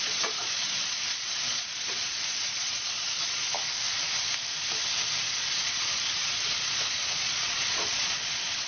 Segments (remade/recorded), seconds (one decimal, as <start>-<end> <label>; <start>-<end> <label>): 0.0-3.5 remade; 3.5-5.3 recorded; 5.3-8.7 remade